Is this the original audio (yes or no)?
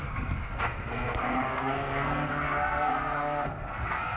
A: no